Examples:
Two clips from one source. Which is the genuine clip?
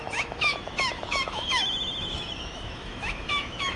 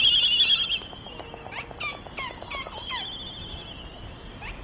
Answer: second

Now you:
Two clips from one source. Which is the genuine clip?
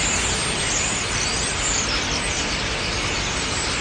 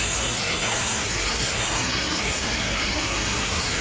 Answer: first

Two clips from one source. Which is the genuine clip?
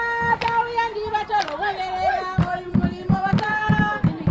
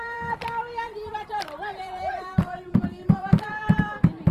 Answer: first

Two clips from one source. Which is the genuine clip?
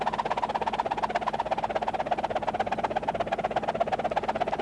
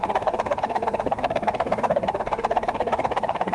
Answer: first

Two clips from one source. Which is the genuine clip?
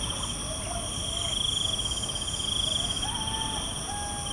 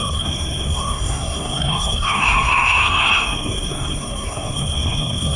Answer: first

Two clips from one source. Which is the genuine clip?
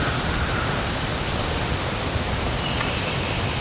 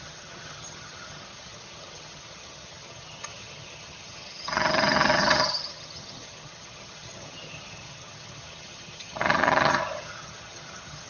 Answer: first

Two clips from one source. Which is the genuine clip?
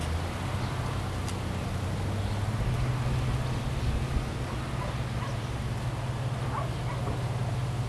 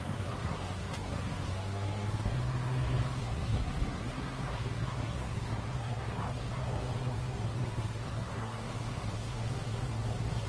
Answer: first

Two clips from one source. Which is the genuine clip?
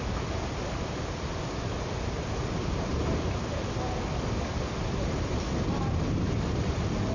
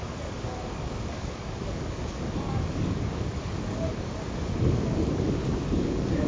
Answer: first